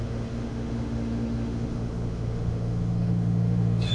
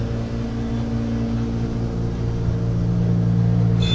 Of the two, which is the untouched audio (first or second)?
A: second